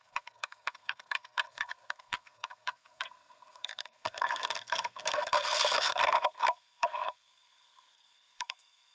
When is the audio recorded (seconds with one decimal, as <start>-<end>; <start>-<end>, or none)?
none